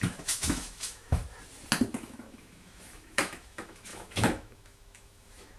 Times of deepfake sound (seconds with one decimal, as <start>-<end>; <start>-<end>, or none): 0.0-1.2; 1.9-5.6